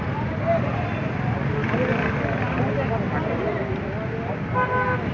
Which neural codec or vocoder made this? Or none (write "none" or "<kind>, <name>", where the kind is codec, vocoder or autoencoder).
none